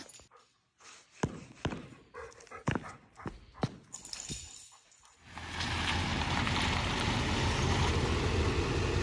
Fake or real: real